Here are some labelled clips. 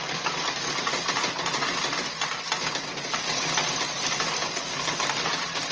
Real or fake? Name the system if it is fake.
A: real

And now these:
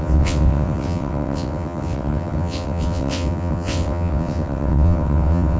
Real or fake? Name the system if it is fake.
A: fake, vocoder, WaveNeXt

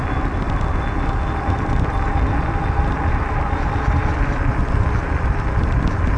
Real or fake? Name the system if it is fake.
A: real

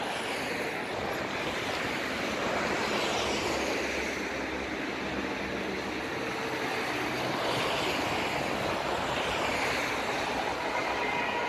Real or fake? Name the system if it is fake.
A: real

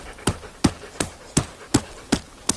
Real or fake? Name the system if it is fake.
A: real